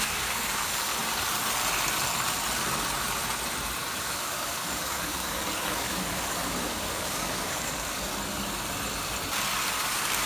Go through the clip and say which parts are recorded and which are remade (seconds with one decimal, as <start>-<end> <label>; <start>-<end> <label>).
0.0-0.9 remade; 0.9-4.0 recorded; 4.0-8.1 remade; 8.1-9.7 recorded; 9.7-10.3 remade